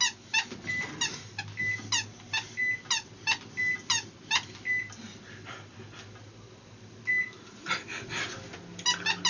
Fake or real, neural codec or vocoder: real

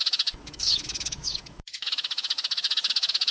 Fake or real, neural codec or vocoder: fake, autoencoder, DAC-VAE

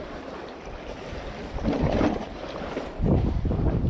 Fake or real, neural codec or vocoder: fake, vocoder, BigVGAN v2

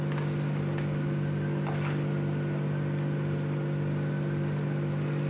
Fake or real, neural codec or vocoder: real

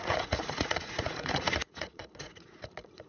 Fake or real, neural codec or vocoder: fake, vocoder, Vocos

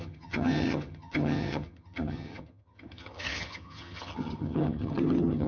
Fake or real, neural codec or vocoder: fake, vocoder, HiFi-GAN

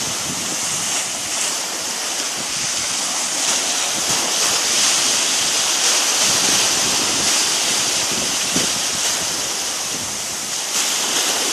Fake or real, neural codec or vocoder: real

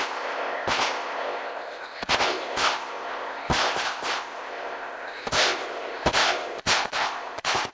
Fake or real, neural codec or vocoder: fake, codec, ZipCodec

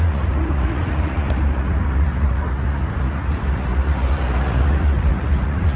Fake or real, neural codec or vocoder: fake, vocoder, Vocos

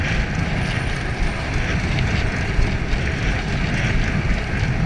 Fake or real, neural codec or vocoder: real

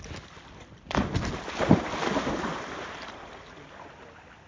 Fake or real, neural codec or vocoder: real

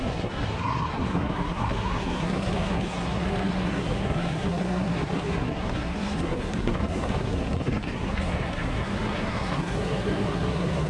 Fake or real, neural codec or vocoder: fake, codec, SNAC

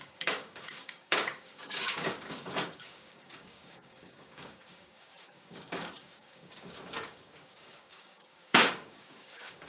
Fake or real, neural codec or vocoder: fake, codec, DAC